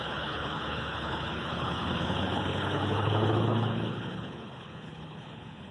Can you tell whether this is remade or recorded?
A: remade